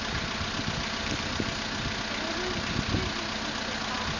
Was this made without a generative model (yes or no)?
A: yes